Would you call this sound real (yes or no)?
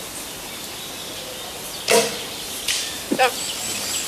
yes